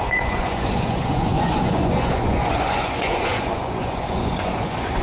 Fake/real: fake